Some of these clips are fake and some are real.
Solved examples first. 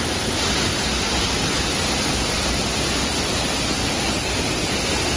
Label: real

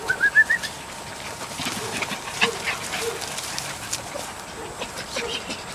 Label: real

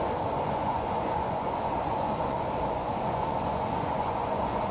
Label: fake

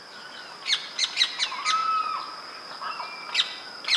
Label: real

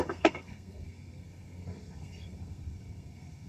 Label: fake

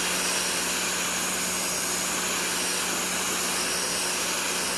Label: real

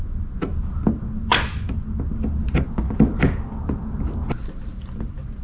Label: real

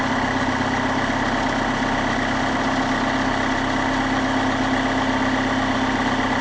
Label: real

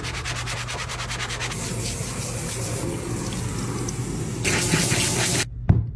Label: real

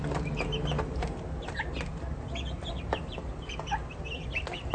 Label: real